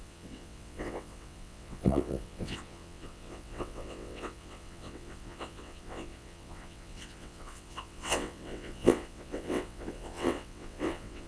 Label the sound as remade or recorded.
remade